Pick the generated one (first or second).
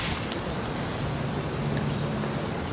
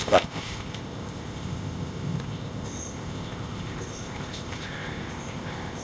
second